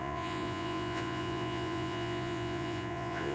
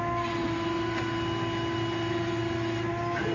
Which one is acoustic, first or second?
second